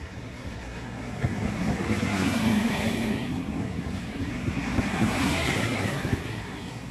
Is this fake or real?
fake